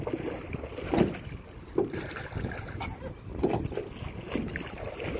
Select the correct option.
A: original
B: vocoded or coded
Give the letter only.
A